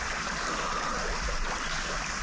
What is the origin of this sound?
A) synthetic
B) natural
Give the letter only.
B